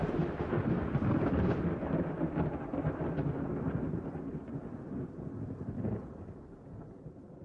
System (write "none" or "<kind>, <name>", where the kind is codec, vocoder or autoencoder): none